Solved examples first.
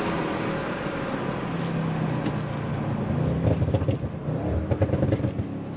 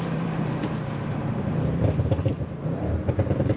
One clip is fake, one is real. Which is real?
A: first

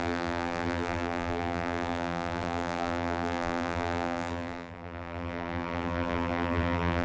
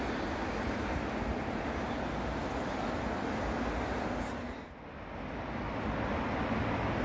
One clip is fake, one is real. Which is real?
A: second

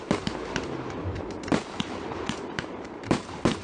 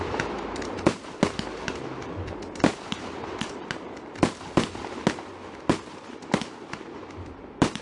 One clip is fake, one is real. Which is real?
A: second